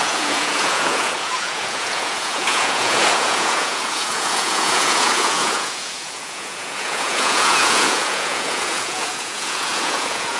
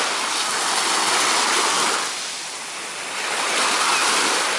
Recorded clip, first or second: second